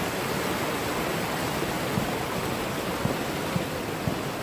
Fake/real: real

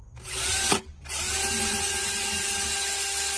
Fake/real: real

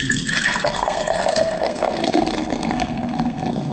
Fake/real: fake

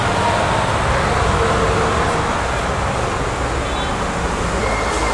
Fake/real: real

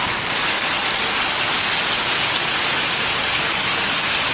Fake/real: real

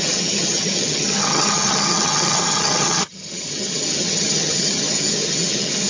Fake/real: fake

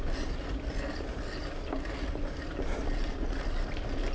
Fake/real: real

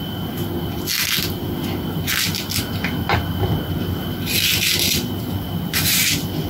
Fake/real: real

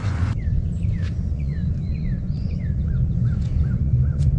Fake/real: fake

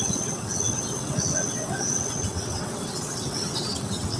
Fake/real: fake